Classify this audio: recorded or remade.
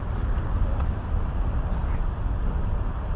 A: recorded